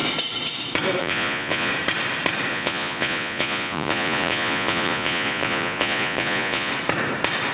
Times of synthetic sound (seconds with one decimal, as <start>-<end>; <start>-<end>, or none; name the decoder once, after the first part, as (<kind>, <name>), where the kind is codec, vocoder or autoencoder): 1.0-1.7 (vocoder, Vocos); 2.5-6.7